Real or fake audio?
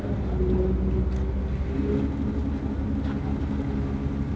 real